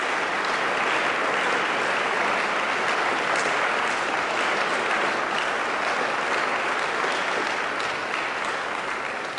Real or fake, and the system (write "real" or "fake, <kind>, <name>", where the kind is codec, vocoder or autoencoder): real